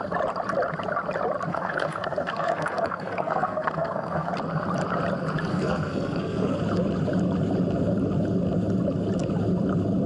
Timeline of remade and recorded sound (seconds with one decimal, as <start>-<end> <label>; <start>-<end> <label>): 0.0-1.5 recorded; 1.5-4.3 remade; 4.3-5.5 recorded; 5.5-6.6 remade; 6.6-10.1 recorded

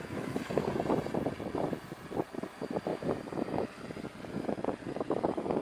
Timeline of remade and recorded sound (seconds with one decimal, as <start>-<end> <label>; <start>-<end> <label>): 0.0-0.8 remade; 0.8-5.6 recorded

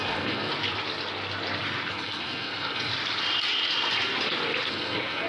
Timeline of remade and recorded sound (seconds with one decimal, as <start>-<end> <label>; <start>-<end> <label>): 0.0-0.5 remade; 0.5-1.9 recorded; 1.9-2.9 remade; 2.9-4.7 recorded; 4.7-5.3 remade

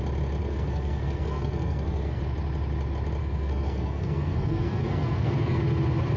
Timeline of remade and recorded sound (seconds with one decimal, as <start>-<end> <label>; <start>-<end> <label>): 0.0-0.4 recorded; 0.4-2.2 remade; 2.2-3.2 recorded; 3.2-5.6 remade; 5.6-6.2 recorded

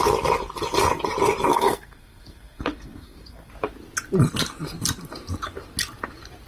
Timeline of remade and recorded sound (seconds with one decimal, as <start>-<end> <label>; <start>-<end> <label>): 0.0-1.5 recorded; 1.5-3.5 remade; 3.5-6.5 recorded

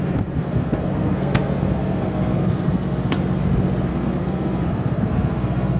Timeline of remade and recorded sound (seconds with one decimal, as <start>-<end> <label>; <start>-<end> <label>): 0.0-3.4 remade; 3.4-3.9 recorded; 3.9-5.8 remade